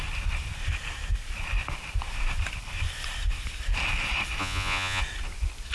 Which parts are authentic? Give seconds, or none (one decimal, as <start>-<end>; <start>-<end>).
0.0-4.4; 5.0-5.7